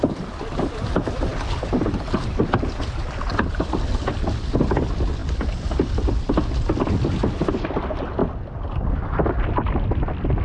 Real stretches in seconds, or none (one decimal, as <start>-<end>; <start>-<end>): 0.0-10.4